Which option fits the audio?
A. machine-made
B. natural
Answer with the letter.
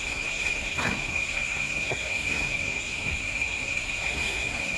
A